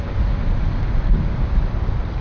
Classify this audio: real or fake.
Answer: real